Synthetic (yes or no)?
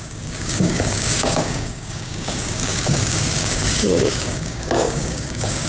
yes